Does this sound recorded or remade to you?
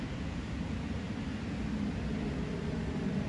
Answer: recorded